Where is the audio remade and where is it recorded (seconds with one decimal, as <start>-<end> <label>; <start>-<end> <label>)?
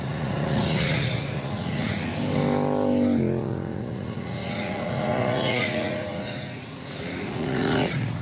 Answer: 0.0-2.1 remade; 2.1-3.4 recorded; 3.4-8.2 remade